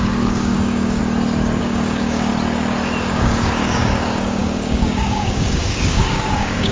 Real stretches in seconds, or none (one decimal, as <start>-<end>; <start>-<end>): 1.0-1.6; 2.3-3.0